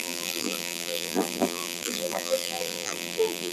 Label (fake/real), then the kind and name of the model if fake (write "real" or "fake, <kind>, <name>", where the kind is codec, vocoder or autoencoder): fake, vocoder, BigVGAN v2